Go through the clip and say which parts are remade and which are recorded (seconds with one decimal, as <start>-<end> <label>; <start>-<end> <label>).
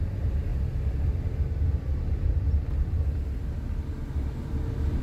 0.0-0.5 remade; 0.5-1.8 recorded; 1.8-5.0 remade